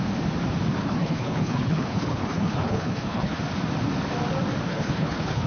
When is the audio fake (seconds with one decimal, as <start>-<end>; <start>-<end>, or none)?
0.8-3.4; 4.7-5.5